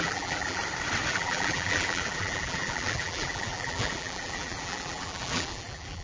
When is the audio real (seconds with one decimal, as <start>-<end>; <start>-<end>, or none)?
0.6-1.1